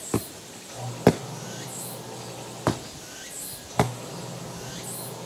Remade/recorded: recorded